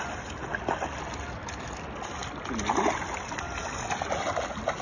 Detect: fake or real real